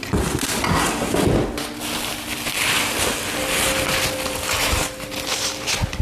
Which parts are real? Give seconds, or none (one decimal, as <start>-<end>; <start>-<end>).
0.0-6.0